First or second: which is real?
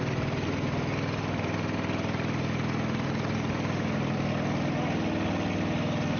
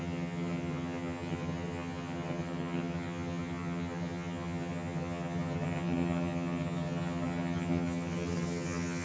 first